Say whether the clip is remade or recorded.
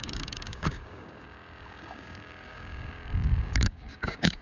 remade